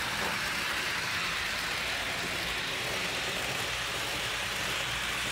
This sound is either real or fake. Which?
real